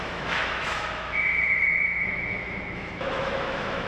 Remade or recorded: remade